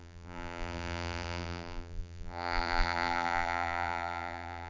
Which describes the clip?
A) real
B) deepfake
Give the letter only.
B